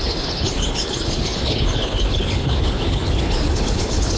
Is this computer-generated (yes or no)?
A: yes